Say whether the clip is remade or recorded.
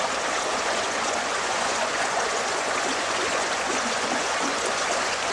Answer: remade